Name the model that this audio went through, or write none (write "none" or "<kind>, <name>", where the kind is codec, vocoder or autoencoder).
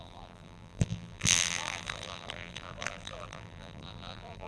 vocoder, BigVGAN v2